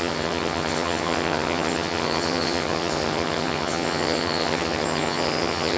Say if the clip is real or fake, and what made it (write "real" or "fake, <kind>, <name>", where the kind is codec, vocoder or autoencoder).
fake, vocoder, HiFi-GAN